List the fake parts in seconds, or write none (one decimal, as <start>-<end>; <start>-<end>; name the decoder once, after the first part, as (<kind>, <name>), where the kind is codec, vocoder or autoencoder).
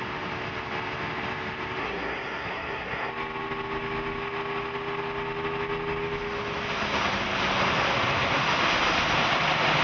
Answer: 1.8-3.1 (codec, SNAC)